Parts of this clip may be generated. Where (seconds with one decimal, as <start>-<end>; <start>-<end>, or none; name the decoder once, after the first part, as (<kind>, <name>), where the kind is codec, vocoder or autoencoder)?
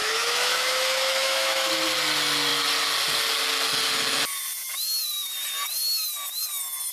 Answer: 0.0-1.7 (autoencoder, DAC-VAE)